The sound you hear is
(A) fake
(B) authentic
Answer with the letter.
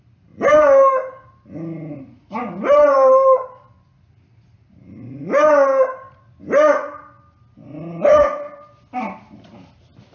B